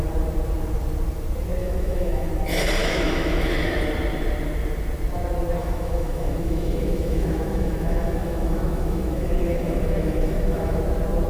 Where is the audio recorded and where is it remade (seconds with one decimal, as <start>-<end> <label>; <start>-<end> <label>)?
0.0-1.6 recorded; 1.6-2.3 remade; 2.3-2.8 recorded; 2.8-3.8 remade; 3.8-5.6 recorded; 5.6-10.8 remade; 10.8-11.3 recorded